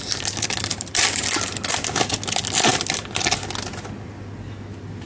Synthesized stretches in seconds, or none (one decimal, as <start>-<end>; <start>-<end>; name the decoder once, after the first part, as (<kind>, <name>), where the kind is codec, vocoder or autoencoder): 0.7-2.1 (vocoder, BigVGAN v2); 2.7-3.4